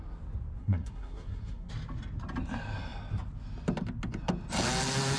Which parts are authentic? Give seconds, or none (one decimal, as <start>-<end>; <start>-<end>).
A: 0.0-0.6; 1.7-5.2